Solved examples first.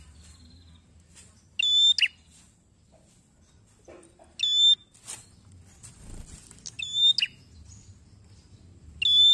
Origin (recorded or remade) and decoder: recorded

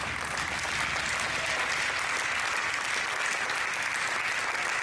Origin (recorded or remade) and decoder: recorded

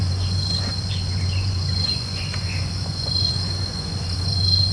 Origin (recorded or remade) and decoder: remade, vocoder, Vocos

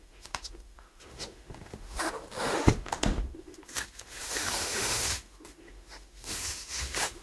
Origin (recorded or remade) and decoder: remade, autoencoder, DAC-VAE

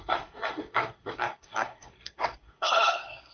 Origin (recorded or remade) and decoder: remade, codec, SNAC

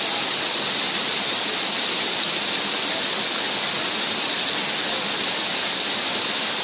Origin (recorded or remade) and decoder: recorded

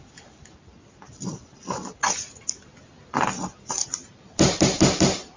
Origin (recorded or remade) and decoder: remade, vocoder, BigVGAN v2